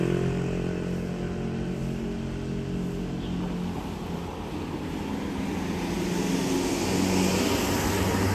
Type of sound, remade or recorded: recorded